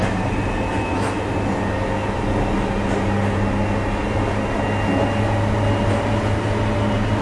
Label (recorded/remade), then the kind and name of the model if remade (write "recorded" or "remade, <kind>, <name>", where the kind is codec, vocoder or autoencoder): recorded